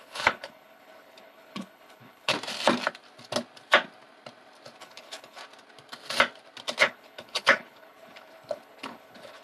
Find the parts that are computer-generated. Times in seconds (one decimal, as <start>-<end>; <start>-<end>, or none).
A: 0.0-2.3; 4.8-5.4; 6.8-9.4